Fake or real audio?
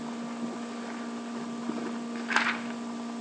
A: real